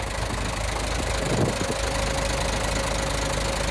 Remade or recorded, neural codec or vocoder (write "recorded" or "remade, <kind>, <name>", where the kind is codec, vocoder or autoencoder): recorded